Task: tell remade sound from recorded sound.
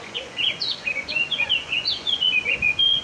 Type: remade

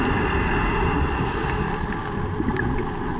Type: recorded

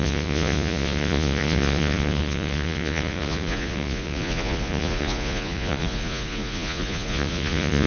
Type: remade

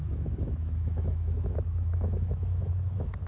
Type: remade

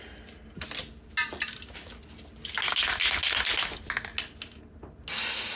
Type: recorded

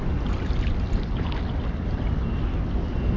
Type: recorded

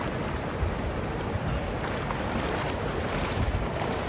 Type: recorded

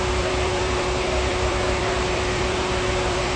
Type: remade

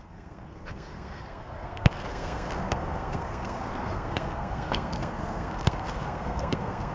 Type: remade